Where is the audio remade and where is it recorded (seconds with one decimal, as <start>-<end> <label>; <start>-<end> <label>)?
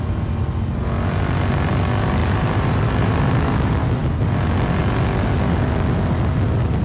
0.0-2.2 recorded; 2.2-3.2 remade; 3.2-6.8 recorded